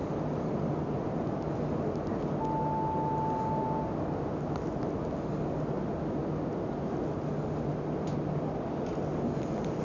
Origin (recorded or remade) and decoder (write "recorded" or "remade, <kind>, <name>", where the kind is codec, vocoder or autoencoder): recorded